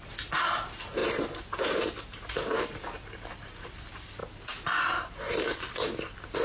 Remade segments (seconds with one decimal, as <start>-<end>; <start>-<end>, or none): 1.0-3.8; 4.2-5.7